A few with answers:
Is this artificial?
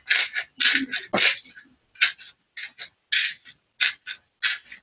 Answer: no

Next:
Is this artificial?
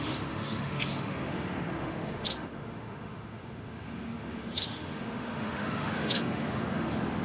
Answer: yes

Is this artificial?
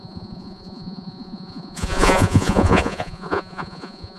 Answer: yes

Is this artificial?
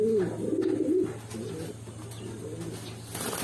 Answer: no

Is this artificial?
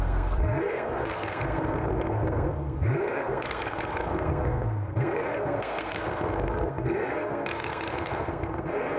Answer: yes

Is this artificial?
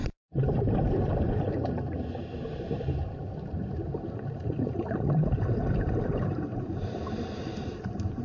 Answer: yes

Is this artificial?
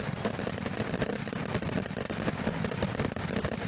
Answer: no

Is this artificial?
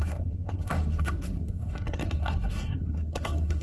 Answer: yes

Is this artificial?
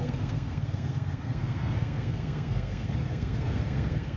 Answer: yes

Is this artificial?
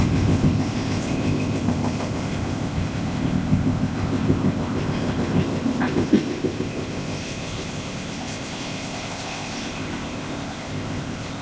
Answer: yes